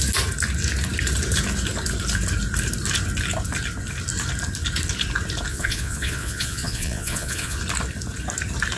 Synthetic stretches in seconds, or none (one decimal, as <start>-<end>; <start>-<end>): 5.5-7.6